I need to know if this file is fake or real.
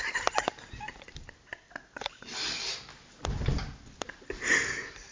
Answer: real